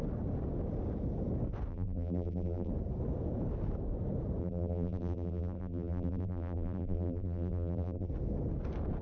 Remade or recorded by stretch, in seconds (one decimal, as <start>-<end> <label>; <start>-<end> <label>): 0.0-1.7 recorded; 1.7-2.7 remade; 2.7-4.4 recorded; 4.4-8.1 remade; 8.1-9.0 recorded